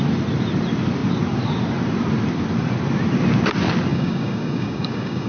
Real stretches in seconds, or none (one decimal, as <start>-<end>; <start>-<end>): 0.0-3.9